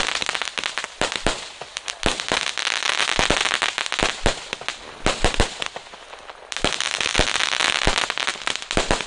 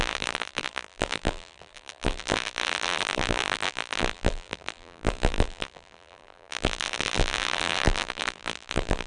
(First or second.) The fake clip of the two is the second